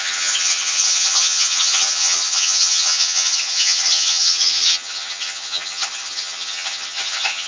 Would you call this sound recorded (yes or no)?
no